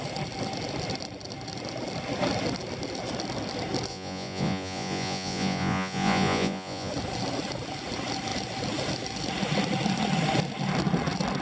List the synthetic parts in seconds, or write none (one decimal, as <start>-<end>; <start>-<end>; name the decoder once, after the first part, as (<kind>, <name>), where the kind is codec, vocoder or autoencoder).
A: 3.9-6.9 (vocoder, Vocos)